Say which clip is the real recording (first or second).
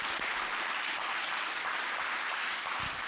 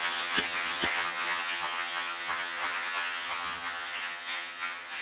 first